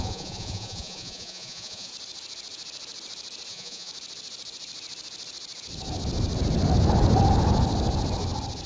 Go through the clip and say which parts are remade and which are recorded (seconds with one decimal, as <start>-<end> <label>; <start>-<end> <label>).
0.0-1.9 remade; 1.9-3.5 recorded; 3.5-3.9 remade; 3.9-8.7 recorded